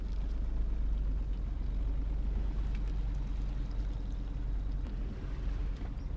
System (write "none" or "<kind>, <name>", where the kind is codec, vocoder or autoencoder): none